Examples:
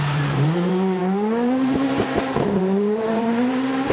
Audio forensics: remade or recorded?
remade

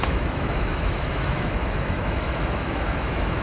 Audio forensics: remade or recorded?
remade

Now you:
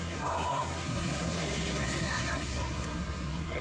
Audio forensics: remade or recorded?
remade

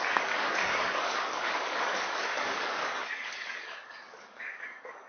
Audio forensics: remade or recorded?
remade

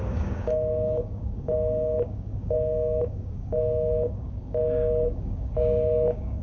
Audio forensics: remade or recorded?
remade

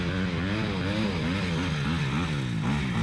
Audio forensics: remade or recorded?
recorded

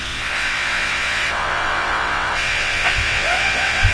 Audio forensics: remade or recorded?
remade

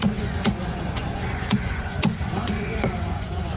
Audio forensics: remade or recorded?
remade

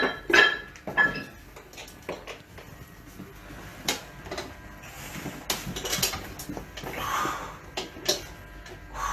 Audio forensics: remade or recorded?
recorded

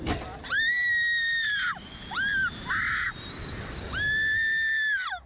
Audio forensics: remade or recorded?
recorded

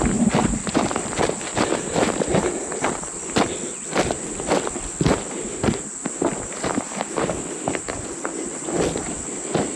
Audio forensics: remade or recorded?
remade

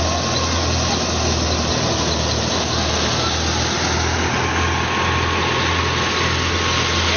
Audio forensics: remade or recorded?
recorded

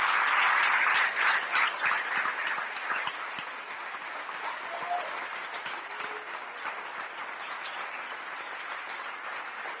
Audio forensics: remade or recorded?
recorded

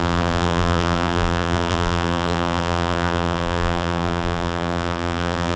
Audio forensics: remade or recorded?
remade